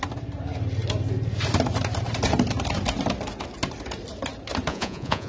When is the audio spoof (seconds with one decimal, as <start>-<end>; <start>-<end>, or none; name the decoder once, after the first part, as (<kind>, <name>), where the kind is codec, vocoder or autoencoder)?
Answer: 4.7-5.3 (vocoder, Vocos)